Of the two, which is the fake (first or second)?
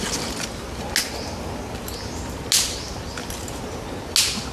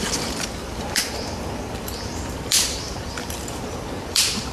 second